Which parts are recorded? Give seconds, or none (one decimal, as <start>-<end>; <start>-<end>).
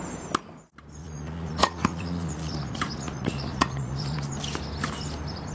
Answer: 0.0-1.0; 4.3-5.5